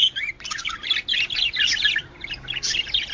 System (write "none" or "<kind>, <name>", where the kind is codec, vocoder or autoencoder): none